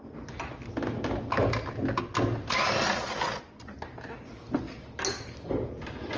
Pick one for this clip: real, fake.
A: real